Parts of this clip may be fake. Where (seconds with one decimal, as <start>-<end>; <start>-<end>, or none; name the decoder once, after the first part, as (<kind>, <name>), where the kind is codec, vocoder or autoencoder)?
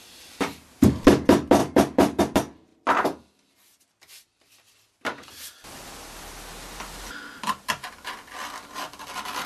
1.6-2.2 (vocoder, BigVGAN v2)